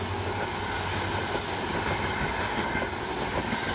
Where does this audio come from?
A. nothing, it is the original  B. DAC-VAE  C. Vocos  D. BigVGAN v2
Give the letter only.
A